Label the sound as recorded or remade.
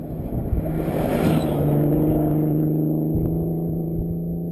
recorded